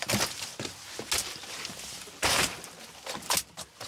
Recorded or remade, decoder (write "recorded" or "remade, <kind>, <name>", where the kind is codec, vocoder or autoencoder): recorded